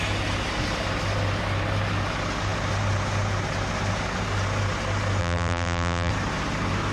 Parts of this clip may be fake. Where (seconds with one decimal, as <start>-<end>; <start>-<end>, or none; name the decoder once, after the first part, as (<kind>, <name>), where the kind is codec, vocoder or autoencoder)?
5.2-6.1 (vocoder, BigVGAN v2)